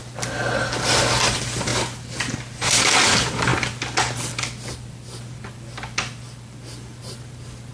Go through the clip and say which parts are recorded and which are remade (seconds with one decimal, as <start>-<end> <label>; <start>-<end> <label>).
0.0-7.7 recorded